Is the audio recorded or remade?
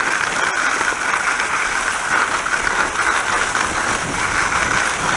recorded